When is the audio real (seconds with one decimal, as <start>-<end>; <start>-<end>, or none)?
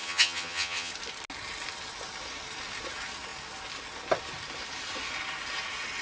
0.9-6.0